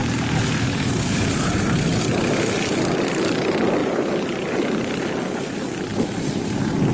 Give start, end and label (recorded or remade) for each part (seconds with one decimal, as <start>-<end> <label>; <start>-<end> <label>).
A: 0.0-2.0 remade; 2.0-3.8 recorded; 3.8-5.0 remade; 5.0-6.9 recorded

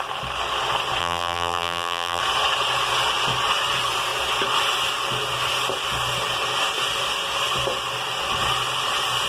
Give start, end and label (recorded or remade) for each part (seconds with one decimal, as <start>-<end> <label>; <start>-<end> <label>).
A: 0.0-1.0 recorded; 1.0-2.2 remade; 2.2-9.3 recorded

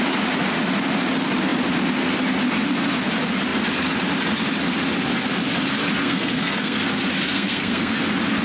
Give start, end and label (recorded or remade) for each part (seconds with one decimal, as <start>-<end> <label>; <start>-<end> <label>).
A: 0.0-6.0 recorded; 6.0-6.8 remade; 6.8-7.3 recorded; 7.3-8.0 remade; 8.0-8.4 recorded